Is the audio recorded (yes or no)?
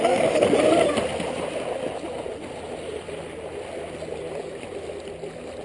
yes